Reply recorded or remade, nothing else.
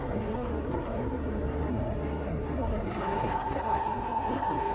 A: remade